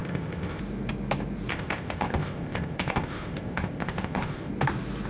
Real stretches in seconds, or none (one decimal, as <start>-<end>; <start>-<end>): 0.6-1.5; 4.5-5.1